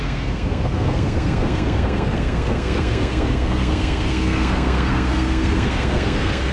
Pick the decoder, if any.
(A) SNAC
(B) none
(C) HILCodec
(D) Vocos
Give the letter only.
A